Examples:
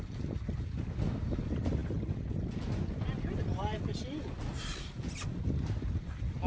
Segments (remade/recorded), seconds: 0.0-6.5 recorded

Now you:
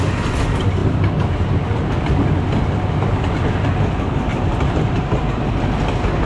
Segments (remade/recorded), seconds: 0.0-4.3 recorded; 4.3-5.2 remade; 5.2-6.3 recorded

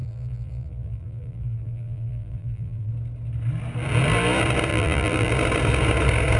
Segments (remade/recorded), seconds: 0.0-2.9 remade; 2.9-4.7 recorded; 4.7-5.3 remade; 5.3-6.4 recorded

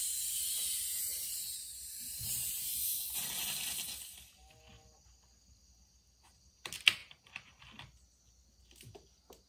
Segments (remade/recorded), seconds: 0.0-2.7 remade; 2.7-7.0 recorded; 7.0-7.6 remade; 7.6-9.5 recorded

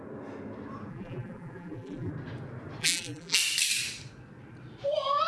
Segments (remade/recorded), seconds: 0.0-0.9 recorded; 0.9-2.1 remade; 2.1-2.8 recorded; 2.8-3.4 remade; 3.4-5.3 recorded

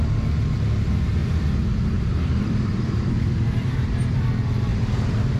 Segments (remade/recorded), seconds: 0.0-1.2 recorded; 1.2-4.2 remade; 4.2-4.7 recorded; 4.7-5.4 remade

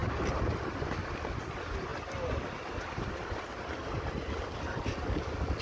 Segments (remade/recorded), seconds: 0.0-0.9 remade; 0.9-5.6 recorded

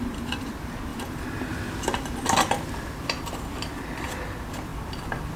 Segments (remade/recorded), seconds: 0.0-0.9 remade; 0.9-2.8 recorded; 2.8-4.7 remade; 4.7-5.4 recorded